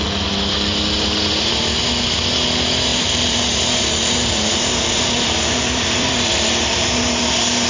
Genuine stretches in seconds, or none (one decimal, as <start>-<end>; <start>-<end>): 0.0-2.9